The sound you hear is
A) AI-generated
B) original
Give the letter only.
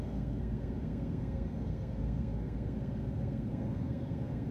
A